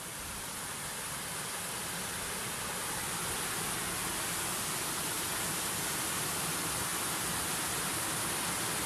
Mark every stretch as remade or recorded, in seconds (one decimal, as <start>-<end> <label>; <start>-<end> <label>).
0.0-8.9 recorded